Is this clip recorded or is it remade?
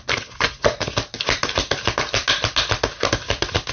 recorded